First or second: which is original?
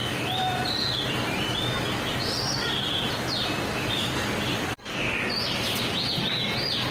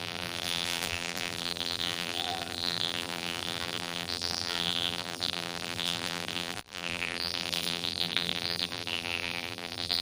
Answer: first